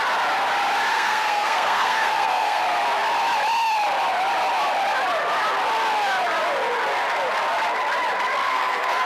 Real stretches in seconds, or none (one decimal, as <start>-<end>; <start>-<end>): 0.0-0.9; 2.6-8.4